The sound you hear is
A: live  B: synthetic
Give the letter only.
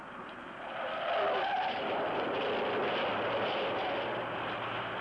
A